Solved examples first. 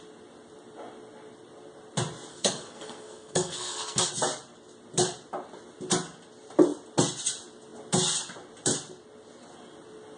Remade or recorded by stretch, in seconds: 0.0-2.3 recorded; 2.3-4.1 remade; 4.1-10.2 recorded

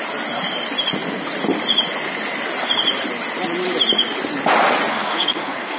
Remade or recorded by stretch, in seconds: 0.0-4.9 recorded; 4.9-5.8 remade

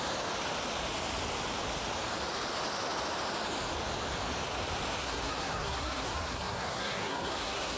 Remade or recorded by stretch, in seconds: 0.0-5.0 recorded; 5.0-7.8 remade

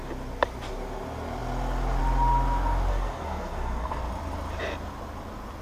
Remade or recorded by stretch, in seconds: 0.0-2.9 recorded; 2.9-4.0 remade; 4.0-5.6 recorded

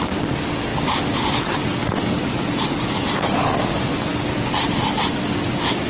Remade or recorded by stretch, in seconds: 0.0-5.9 recorded